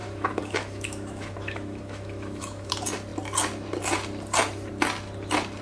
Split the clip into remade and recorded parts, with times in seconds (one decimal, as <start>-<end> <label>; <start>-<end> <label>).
0.0-2.7 remade; 2.7-5.6 recorded